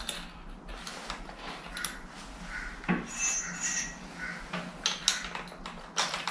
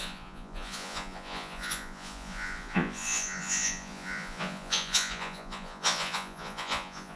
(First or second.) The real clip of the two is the first